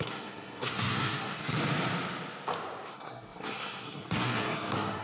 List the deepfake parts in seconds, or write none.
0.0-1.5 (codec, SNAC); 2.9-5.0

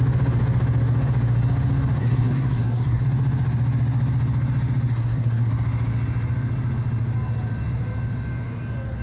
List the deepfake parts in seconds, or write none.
2.0-3.0 (codec, SNAC); 4.9-5.5

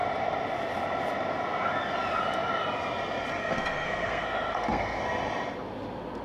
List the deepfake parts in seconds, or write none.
3.4-5.0 (codec, SNAC)

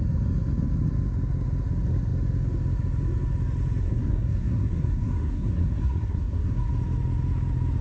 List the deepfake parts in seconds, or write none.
3.8-6.7 (codec, SNAC)

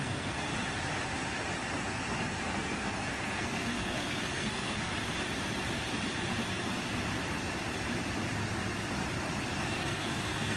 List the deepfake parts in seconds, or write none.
0.0-0.5 (codec, SNAC); 2.4-4.9; 9.7-10.6